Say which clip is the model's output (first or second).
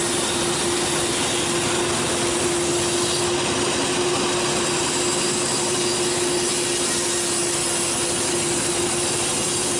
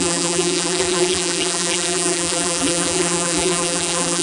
second